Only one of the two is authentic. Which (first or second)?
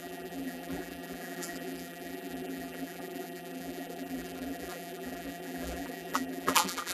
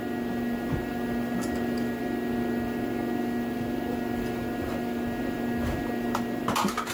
second